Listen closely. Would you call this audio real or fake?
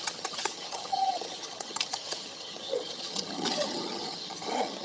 fake